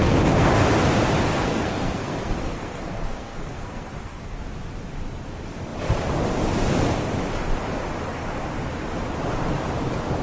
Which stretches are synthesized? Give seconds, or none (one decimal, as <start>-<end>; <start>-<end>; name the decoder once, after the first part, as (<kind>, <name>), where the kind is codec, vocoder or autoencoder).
0.0-0.5 (codec, SNAC); 1.3-4.4

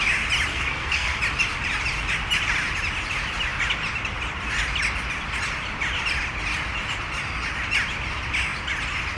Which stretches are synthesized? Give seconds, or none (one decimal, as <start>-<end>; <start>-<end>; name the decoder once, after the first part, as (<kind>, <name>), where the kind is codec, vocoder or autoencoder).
0.5-1.2 (codec, SNAC)

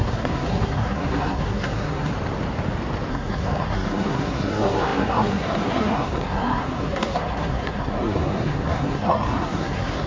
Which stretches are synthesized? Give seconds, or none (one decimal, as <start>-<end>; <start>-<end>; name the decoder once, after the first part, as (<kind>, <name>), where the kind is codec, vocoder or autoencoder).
0.0-2.1 (codec, SNAC); 3.1-10.1